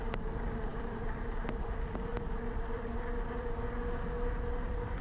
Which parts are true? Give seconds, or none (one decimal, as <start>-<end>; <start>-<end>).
0.0-0.7; 1.4-2.1; 3.7-5.0